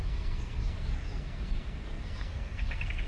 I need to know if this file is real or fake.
fake